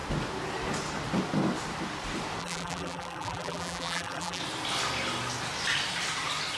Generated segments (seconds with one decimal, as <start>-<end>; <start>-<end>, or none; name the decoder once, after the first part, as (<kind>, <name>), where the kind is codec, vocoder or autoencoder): 2.4-4.4 (vocoder, BigVGAN v2)

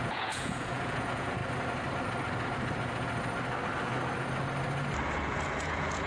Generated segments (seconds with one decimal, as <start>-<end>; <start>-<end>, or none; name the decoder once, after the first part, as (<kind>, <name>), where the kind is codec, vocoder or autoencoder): 0.0-1.4 (vocoder, Vocos); 5.1-6.1

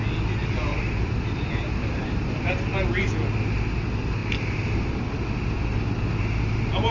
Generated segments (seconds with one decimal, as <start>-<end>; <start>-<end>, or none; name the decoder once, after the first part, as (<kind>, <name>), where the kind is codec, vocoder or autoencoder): 0.4-2.5 (vocoder, BigVGAN v2); 4.2-5.0

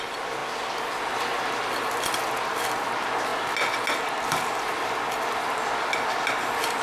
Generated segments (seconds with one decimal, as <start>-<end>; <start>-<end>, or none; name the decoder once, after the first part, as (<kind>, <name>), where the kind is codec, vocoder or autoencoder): none

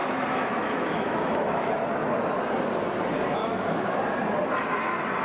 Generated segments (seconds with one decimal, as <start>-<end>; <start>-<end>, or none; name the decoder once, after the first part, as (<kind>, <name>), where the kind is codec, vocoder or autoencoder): 0.0-1.7 (autoencoder, DAC-VAE); 3.4-4.0

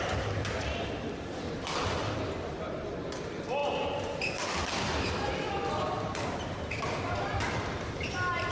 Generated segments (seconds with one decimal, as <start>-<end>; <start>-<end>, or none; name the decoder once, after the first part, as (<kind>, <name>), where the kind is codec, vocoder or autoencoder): none

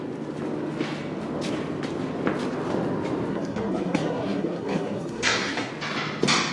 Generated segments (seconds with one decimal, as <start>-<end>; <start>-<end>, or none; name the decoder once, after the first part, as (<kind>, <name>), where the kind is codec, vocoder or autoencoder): 3.3-5.7 (codec, SNAC)

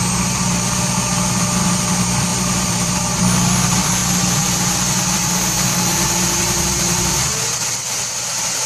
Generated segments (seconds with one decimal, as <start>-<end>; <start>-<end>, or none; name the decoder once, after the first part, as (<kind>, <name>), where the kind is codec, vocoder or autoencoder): 2.3-3.2 (vocoder, BigVGAN v2); 6.4-7.4